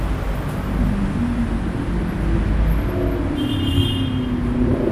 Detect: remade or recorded recorded